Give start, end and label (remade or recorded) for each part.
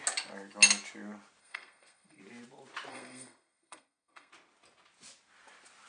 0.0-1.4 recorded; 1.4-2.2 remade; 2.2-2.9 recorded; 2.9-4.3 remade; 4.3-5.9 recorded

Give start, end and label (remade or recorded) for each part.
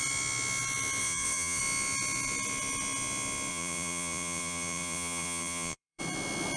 0.0-1.0 recorded; 1.0-1.6 remade; 1.6-3.5 recorded; 3.5-6.0 remade; 6.0-6.6 recorded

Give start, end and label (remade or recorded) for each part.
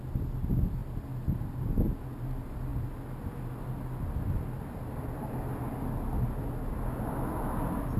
0.0-8.0 recorded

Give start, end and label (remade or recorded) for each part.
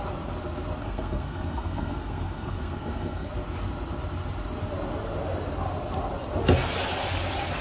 0.0-0.8 recorded; 0.8-3.3 remade; 3.3-7.6 recorded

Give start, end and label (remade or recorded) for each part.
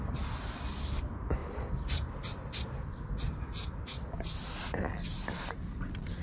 0.0-6.2 recorded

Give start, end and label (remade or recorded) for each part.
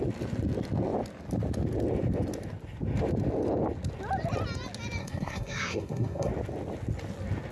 0.0-5.0 recorded; 5.0-6.3 remade; 6.3-7.5 recorded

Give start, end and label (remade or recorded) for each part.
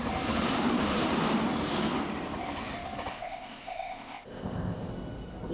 0.0-3.1 recorded; 3.1-4.9 remade; 4.9-5.5 recorded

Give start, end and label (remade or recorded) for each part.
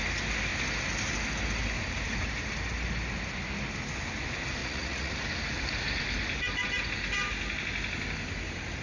0.0-4.6 recorded; 4.6-5.1 remade; 5.1-8.8 recorded